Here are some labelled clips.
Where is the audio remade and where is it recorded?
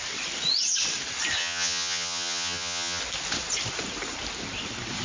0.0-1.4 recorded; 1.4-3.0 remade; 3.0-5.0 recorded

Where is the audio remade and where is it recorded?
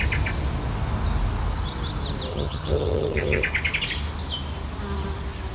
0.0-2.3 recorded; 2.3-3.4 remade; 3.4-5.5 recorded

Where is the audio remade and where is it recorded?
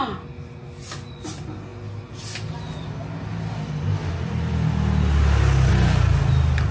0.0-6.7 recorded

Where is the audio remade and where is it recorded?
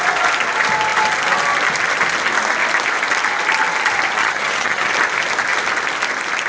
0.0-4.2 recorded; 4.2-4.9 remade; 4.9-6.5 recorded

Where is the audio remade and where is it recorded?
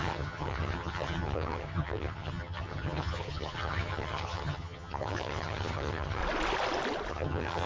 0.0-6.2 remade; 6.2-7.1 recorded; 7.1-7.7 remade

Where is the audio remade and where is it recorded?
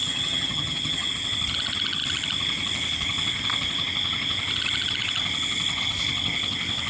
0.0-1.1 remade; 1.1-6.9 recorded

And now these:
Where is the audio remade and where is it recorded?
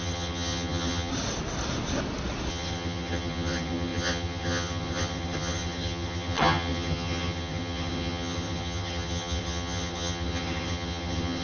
0.0-1.1 remade; 1.1-2.5 recorded; 2.5-11.4 remade